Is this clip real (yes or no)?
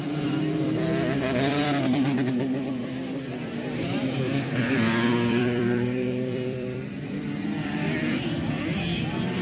no